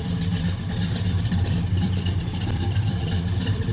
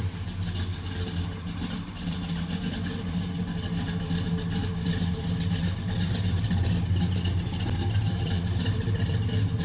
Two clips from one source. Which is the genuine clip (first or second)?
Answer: second